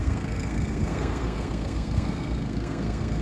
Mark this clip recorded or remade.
remade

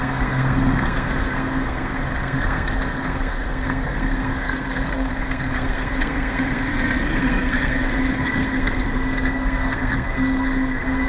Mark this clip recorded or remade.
remade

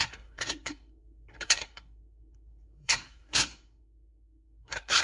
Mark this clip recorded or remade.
remade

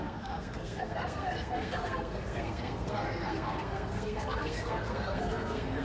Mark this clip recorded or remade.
remade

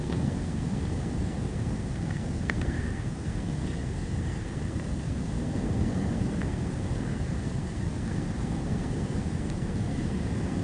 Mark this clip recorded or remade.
remade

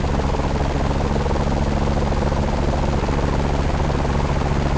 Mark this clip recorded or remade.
recorded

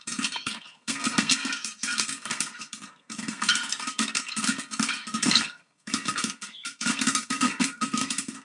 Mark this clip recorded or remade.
remade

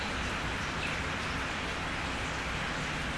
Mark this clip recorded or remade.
recorded